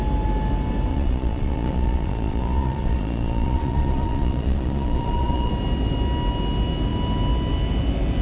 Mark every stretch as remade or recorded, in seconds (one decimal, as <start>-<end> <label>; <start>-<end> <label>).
0.0-0.9 recorded; 0.9-5.5 remade; 5.5-8.2 recorded